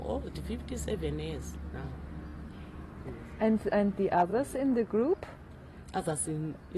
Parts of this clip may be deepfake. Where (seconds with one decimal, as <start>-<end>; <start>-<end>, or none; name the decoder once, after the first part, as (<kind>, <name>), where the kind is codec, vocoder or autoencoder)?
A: none